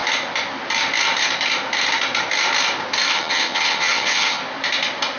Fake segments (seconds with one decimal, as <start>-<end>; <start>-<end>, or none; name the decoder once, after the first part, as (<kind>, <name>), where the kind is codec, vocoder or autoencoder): 3.1-4.4 (vocoder, HiFi-GAN)